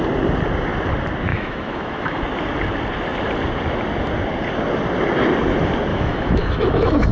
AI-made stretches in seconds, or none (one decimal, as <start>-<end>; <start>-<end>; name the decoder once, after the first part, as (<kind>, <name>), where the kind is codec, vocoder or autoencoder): 1.3-2.2 (autoencoder, DAC-VAE); 5.9-7.1